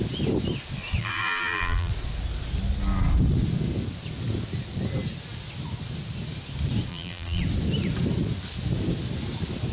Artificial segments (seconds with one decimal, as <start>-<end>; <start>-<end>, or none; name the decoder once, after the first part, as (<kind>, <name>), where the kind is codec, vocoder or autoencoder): 1.0-1.9 (vocoder, BigVGAN v2); 6.9-7.4